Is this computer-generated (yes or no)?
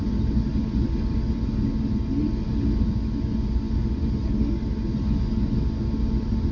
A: no